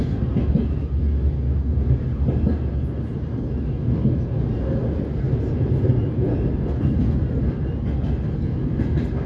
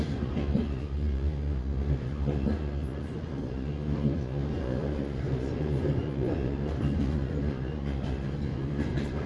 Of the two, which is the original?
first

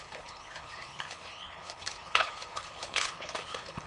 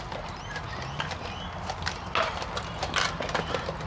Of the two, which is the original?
second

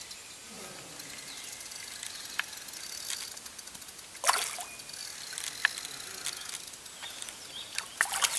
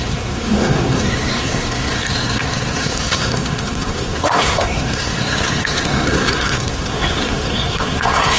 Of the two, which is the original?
first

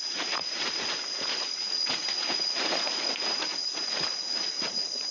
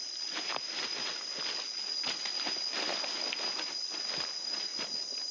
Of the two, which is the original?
second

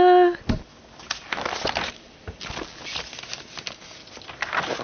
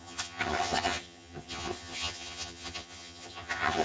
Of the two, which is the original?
first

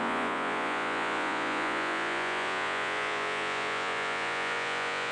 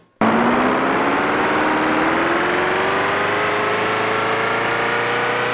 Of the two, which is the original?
second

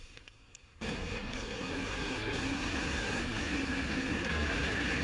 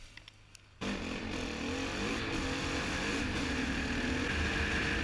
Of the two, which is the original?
second